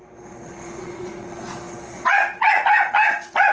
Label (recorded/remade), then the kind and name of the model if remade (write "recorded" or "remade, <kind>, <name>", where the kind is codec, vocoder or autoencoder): remade, vocoder, Vocos